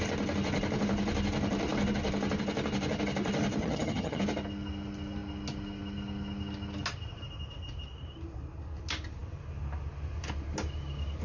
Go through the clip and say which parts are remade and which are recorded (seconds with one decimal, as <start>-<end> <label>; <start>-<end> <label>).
0.0-3.6 recorded; 3.6-4.2 remade; 4.2-11.2 recorded